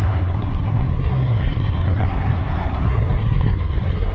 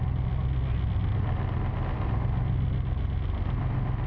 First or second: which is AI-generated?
first